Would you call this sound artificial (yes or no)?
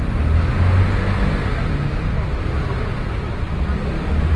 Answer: no